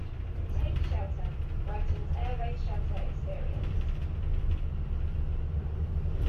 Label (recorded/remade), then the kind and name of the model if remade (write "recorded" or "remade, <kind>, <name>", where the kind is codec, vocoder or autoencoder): recorded